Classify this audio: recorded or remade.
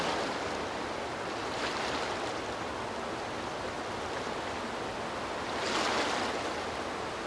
recorded